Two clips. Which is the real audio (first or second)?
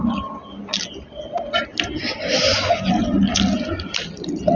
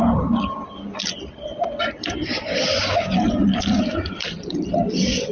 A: first